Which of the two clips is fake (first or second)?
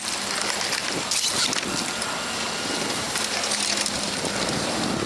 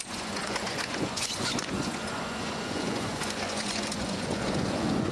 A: second